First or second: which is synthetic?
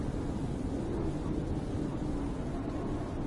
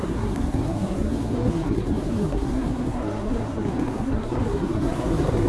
second